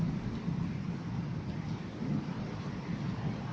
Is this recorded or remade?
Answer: recorded